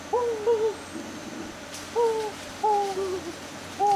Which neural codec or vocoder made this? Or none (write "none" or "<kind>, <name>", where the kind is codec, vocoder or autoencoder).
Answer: none